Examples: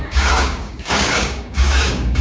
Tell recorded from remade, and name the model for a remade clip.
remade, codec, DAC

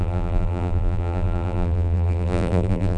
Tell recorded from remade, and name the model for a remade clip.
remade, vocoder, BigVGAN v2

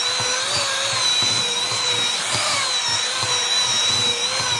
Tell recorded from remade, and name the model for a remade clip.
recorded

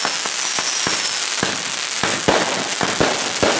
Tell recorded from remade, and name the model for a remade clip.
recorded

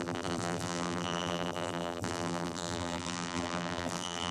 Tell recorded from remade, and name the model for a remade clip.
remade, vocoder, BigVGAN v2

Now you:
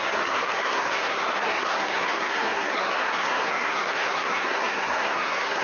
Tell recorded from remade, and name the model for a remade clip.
remade, codec, SNAC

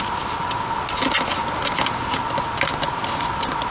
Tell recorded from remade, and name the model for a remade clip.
recorded